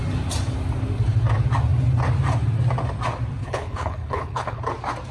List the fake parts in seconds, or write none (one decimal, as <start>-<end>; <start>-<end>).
3.4-4.6